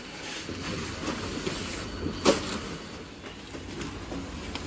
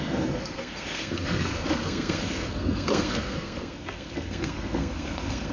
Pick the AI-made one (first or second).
second